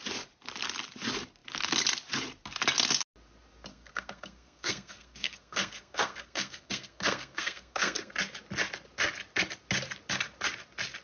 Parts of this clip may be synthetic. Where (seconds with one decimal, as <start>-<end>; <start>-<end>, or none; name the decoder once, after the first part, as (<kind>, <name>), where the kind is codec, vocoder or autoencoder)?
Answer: 3.7-8.1 (codec, SNAC)